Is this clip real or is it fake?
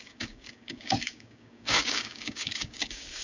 fake